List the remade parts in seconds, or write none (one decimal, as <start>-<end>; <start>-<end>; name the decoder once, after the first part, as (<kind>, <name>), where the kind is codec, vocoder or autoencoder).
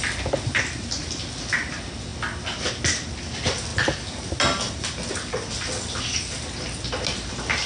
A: none